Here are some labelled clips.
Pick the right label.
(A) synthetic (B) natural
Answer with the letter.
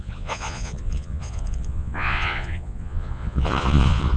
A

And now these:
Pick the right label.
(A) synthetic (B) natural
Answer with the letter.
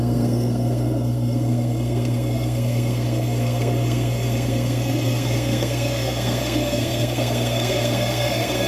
A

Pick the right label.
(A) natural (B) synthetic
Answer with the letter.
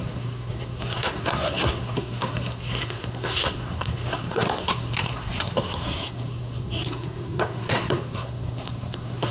B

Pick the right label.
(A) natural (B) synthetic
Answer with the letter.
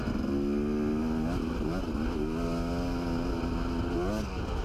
A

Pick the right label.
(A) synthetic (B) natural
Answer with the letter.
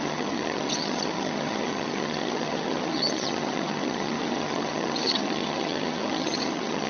A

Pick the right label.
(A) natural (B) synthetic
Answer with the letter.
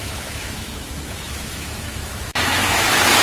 B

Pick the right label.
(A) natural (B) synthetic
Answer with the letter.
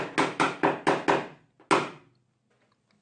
A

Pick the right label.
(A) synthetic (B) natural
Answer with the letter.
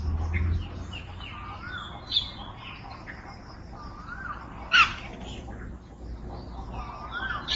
B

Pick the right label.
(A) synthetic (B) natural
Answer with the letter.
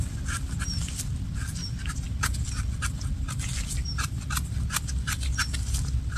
B